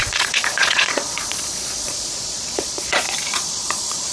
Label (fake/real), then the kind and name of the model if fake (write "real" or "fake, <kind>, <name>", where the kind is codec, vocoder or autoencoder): fake, vocoder, Vocos